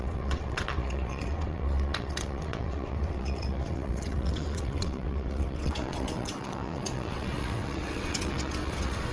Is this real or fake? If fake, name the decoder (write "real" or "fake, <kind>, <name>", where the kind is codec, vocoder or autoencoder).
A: fake, vocoder, WaveNeXt